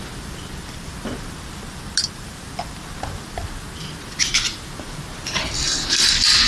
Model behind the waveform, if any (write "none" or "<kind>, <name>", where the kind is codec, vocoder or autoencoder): none